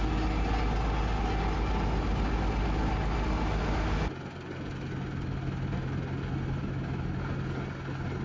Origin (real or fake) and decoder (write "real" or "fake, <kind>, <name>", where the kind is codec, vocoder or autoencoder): real